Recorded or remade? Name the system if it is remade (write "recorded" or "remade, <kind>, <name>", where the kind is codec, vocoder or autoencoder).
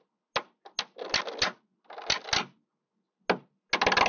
recorded